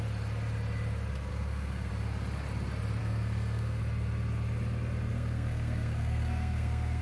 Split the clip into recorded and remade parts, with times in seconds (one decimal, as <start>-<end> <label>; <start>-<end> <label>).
0.0-1.3 recorded; 1.3-1.9 remade; 1.9-3.0 recorded; 3.0-3.8 remade; 3.8-5.1 recorded; 5.1-7.0 remade